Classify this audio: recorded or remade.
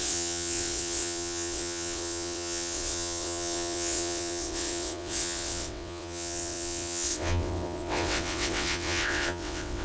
remade